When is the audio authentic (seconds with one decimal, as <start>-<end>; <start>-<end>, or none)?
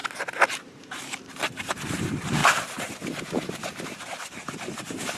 0.0-0.6; 2.4-3.2